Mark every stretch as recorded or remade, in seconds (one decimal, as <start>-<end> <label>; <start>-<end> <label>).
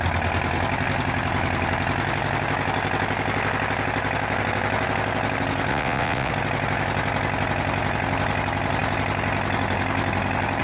0.0-5.7 recorded; 5.7-6.3 remade; 6.3-10.6 recorded